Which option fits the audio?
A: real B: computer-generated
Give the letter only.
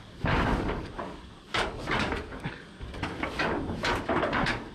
B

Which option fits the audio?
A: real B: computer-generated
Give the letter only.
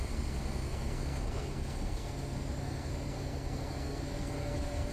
B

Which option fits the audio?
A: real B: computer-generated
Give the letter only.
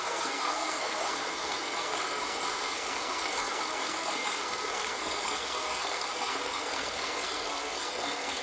B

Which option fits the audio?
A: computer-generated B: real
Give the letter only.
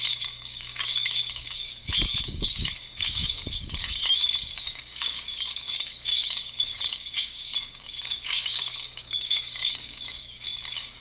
A